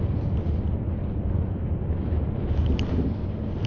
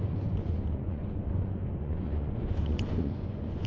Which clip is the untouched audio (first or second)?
first